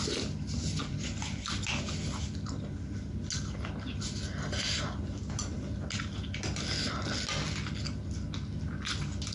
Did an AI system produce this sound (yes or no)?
no